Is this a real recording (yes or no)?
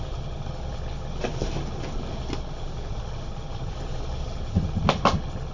yes